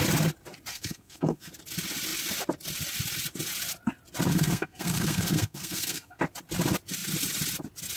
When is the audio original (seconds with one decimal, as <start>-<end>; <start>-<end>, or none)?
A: 0.0-0.7; 1.5-4.3; 6.2-8.0